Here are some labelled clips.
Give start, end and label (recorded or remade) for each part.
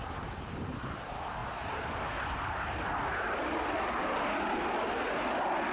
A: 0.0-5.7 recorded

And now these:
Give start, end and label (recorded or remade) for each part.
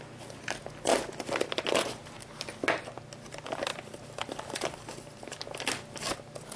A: 0.0-3.7 recorded; 3.7-6.6 remade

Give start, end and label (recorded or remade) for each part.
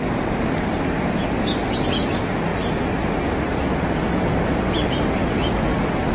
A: 0.0-2.5 recorded; 2.5-6.1 remade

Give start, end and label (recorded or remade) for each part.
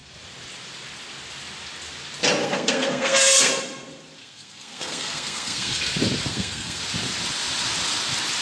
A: 0.0-2.4 recorded; 2.4-3.5 remade; 3.5-4.2 recorded; 4.2-5.8 remade; 5.8-6.3 recorded; 6.3-6.8 remade; 6.8-8.4 recorded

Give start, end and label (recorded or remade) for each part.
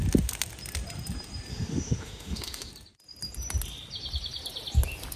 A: 0.0-1.5 recorded; 1.5-2.7 remade; 2.7-5.2 recorded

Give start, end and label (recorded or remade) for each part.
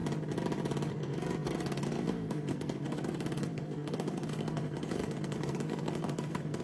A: 0.0-0.9 recorded; 0.9-6.6 remade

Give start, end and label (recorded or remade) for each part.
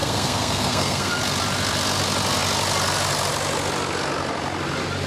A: 0.0-1.1 remade; 1.1-5.1 recorded